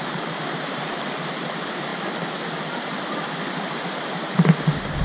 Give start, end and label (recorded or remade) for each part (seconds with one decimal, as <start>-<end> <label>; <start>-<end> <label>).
0.0-1.9 remade; 1.9-5.0 recorded